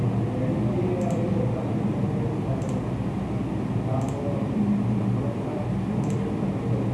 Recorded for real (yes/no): yes